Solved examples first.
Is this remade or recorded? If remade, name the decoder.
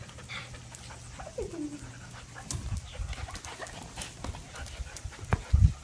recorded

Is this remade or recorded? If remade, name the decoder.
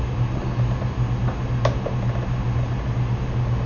recorded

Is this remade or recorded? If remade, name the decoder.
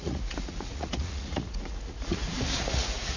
remade, vocoder, Vocos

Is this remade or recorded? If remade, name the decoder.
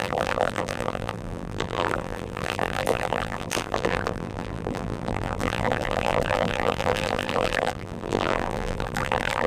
remade, vocoder, BigVGAN v2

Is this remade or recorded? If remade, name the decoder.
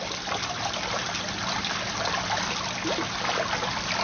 recorded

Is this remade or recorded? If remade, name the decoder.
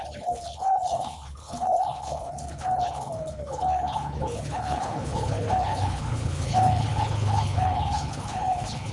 remade, codec, HILCodec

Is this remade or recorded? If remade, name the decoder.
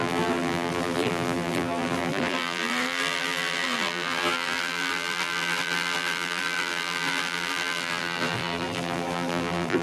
remade, vocoder, BigVGAN v2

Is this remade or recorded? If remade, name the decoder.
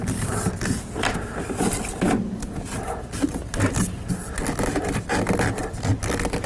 recorded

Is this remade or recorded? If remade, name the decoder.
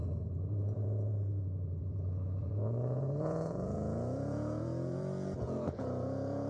remade, vocoder, Vocos